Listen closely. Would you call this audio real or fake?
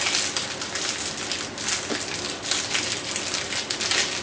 real